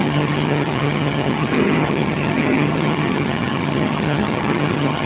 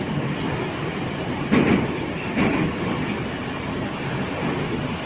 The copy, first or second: first